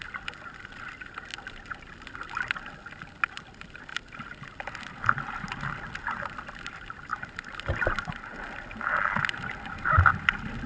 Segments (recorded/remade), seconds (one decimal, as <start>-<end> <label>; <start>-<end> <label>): 0.0-10.7 recorded